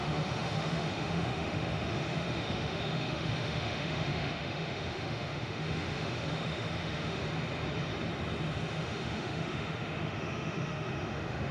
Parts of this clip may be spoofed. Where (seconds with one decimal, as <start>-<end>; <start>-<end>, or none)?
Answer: 0.0-7.2; 8.7-11.5